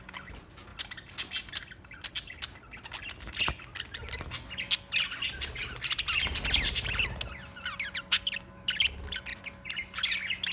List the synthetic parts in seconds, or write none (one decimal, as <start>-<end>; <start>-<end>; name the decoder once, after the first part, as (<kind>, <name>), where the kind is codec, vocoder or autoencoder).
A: 0.7-2.1 (vocoder, BigVGAN v2); 9.3-10.0